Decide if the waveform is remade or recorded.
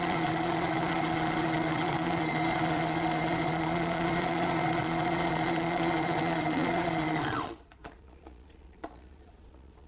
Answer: remade